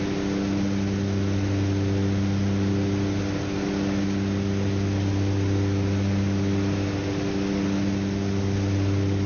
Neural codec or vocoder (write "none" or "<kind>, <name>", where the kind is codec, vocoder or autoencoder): none